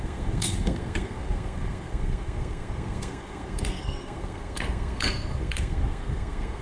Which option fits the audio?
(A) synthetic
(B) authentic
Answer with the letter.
A